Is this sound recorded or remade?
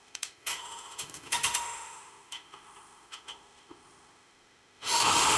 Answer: remade